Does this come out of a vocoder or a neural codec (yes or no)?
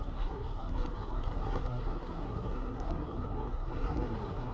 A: yes